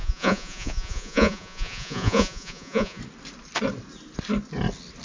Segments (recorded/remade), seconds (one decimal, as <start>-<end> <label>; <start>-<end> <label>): 0.0-3.0 remade; 3.0-5.0 recorded